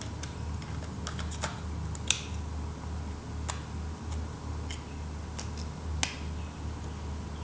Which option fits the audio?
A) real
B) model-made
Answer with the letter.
A